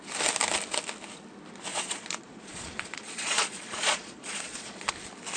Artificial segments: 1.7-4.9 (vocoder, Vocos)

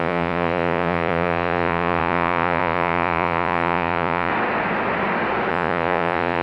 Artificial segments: 0.0-4.3 (vocoder, Vocos); 5.5-6.4

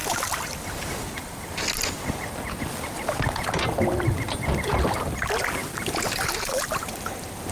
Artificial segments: none

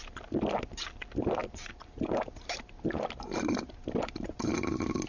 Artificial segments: 1.4-4.5 (vocoder, BigVGAN v2)

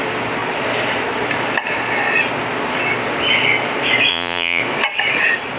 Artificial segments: 4.1-4.6 (vocoder, Vocos)

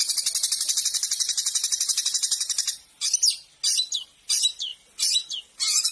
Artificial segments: none